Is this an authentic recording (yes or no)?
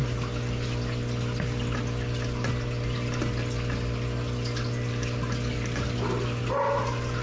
yes